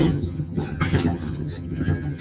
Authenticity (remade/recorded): remade